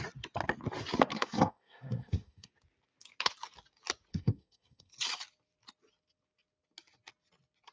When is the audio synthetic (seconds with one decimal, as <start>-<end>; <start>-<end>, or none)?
1.1-2.5; 4.1-4.9